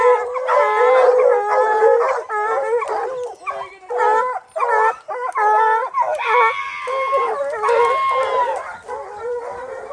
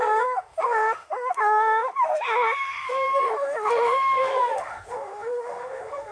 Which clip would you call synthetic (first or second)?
second